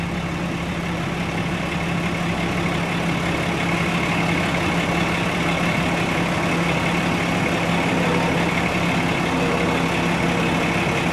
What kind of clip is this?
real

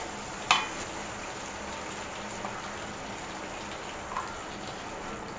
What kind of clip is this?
real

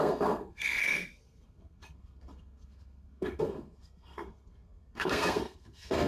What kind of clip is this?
fake